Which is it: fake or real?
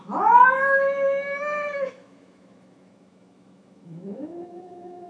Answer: fake